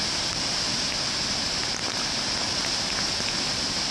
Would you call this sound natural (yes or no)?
yes